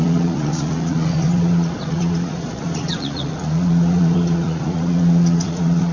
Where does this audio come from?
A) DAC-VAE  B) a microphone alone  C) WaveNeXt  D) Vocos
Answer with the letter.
D